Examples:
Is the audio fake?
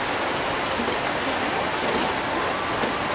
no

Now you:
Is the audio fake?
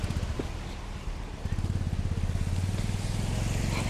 no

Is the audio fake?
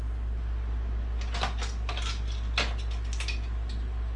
no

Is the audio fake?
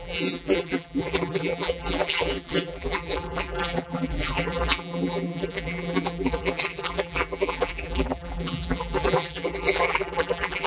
yes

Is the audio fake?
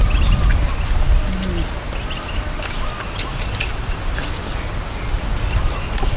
no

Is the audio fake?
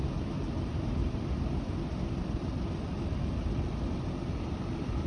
yes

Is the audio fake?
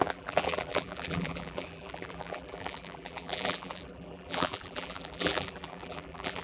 yes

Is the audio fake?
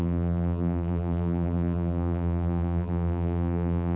yes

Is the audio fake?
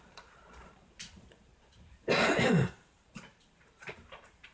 yes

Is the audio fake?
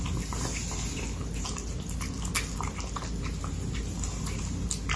no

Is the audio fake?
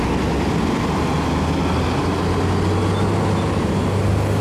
no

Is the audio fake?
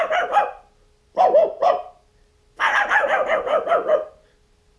no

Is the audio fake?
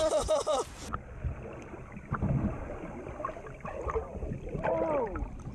no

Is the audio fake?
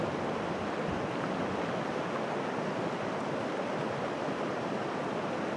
no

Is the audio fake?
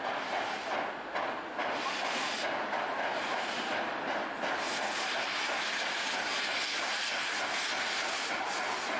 no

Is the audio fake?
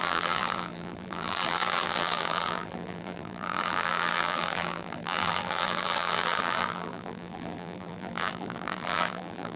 yes